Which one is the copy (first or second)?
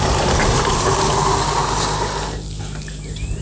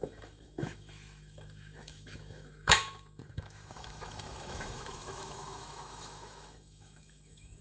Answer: second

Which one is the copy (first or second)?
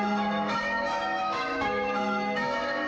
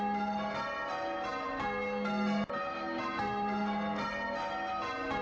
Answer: first